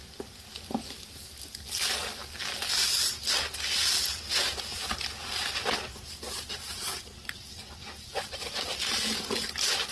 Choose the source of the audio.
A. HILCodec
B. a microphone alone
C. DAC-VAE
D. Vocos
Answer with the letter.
B